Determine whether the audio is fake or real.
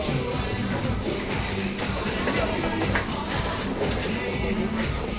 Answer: real